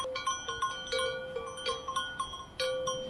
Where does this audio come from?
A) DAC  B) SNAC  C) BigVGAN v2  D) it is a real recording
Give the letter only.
D